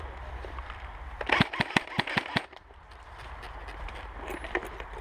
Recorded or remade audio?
remade